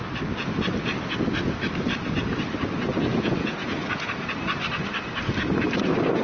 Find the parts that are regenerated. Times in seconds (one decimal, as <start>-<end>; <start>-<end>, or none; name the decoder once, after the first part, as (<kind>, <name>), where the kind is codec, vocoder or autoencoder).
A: 3.1-4.1 (vocoder, Vocos)